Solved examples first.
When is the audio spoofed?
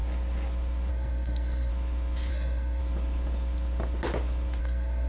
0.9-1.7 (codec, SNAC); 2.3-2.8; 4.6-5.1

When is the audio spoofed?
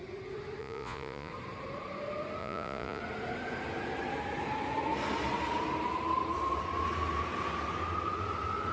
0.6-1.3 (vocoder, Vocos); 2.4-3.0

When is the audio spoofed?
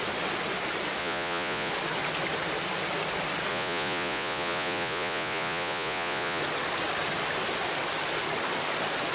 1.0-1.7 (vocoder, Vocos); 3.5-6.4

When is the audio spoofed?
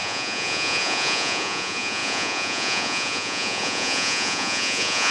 0.0-5.1 (vocoder, Vocos)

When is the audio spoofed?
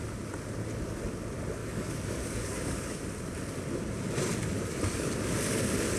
1.6-3.0 (codec, DAC); 4.3-5.1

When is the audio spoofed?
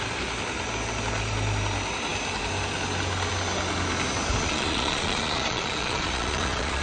4.4-6.8 (vocoder, Vocos)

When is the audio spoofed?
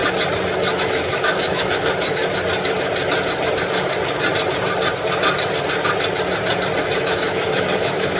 0.8-2.2 (autoencoder, DAC-VAE); 6.8-8.2